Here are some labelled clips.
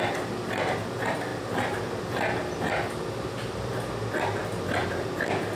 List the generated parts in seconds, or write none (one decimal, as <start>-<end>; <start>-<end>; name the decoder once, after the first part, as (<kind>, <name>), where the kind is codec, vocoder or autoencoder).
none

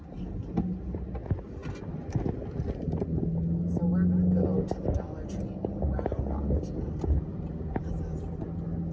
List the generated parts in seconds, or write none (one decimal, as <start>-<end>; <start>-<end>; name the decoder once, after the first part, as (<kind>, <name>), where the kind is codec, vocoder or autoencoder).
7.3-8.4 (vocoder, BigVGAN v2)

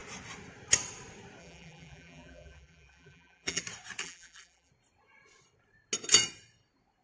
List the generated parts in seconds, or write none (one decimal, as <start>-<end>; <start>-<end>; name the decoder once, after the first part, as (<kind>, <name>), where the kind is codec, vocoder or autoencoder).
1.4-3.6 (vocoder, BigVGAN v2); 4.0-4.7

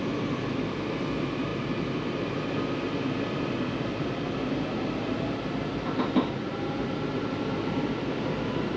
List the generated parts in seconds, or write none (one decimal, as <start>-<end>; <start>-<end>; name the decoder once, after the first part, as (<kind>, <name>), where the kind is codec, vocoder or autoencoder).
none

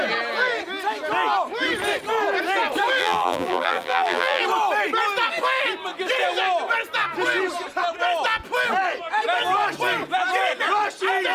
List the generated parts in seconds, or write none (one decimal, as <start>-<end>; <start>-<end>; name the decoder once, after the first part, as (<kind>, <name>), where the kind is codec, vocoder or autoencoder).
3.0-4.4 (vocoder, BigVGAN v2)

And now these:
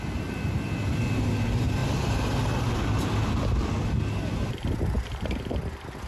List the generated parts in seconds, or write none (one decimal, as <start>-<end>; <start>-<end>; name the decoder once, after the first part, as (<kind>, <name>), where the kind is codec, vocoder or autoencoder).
1.8-5.5 (vocoder, BigVGAN v2)